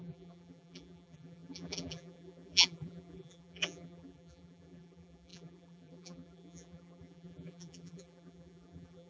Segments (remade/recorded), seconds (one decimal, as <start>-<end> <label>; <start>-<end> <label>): 0.0-9.1 remade